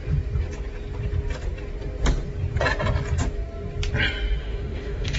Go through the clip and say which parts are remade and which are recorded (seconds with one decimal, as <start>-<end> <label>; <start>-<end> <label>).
0.0-4.4 recorded; 4.4-5.2 remade